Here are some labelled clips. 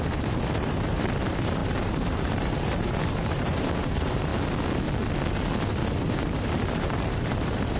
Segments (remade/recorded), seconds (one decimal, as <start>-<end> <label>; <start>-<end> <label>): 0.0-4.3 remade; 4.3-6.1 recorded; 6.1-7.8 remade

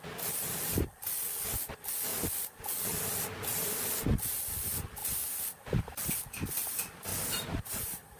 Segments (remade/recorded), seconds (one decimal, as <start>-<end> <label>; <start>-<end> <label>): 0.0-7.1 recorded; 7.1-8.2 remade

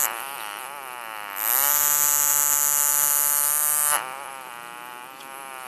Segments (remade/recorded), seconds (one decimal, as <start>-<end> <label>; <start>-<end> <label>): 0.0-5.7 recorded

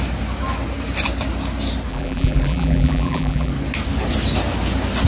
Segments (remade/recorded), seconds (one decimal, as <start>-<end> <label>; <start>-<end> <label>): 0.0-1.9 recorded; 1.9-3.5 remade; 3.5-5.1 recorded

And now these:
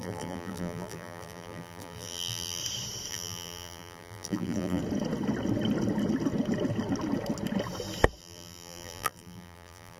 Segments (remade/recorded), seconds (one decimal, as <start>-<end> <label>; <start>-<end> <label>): 0.0-2.6 remade; 2.6-3.1 recorded; 3.1-4.8 remade; 4.8-8.2 recorded; 8.2-10.0 remade